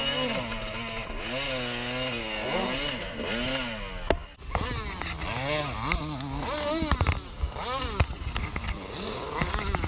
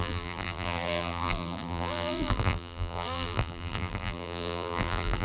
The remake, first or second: second